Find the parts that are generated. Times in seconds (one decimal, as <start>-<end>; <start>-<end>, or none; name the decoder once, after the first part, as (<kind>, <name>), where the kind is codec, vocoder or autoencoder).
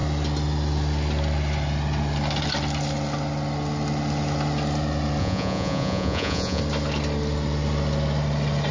5.2-6.6 (vocoder, Vocos)